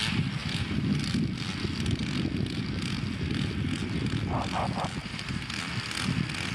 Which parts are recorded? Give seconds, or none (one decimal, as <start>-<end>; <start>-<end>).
0.0-0.4; 1.0-5.0; 5.6-6.5